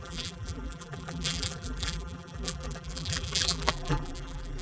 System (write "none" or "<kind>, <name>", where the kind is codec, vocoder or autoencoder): vocoder, BigVGAN v2